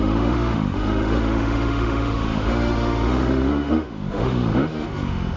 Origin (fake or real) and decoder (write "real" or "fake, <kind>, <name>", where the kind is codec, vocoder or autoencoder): fake, autoencoder, DAC-VAE